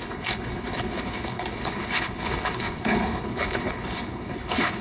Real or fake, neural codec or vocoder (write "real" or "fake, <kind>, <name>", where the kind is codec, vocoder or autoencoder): fake, codec, HILCodec